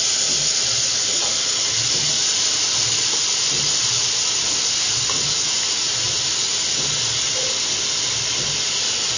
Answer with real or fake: fake